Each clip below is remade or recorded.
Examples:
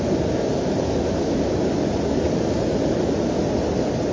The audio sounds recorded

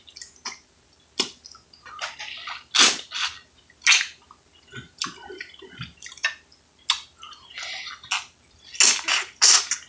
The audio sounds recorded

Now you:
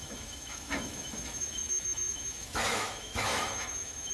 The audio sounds remade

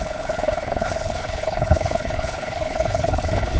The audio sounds remade